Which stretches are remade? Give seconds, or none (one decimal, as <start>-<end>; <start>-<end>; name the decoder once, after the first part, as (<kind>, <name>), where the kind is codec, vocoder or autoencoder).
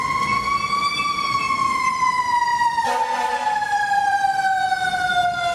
2.5-4.6 (vocoder, BigVGAN v2)